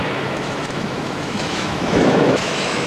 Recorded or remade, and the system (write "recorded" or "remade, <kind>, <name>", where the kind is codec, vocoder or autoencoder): remade, autoencoder, DAC-VAE